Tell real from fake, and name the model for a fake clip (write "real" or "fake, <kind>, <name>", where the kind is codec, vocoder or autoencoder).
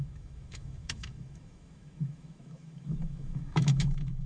fake, autoencoder, DAC-VAE